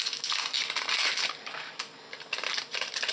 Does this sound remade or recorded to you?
recorded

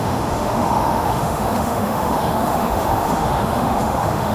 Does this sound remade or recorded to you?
remade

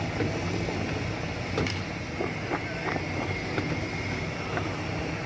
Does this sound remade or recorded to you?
recorded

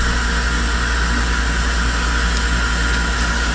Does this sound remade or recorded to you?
recorded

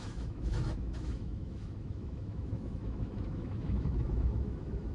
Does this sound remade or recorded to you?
remade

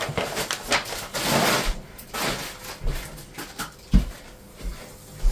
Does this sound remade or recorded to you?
recorded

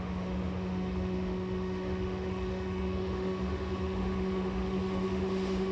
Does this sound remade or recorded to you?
remade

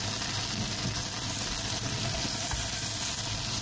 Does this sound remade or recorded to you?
recorded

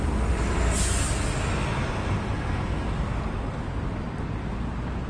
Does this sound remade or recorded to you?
recorded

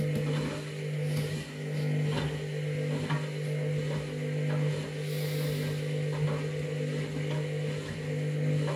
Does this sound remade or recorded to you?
recorded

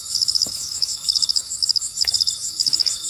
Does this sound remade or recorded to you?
remade